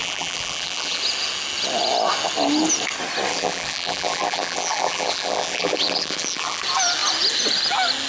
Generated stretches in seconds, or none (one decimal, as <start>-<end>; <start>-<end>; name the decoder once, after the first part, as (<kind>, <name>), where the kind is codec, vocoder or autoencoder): 0.0-1.0 (vocoder, BigVGAN v2); 3.3-6.6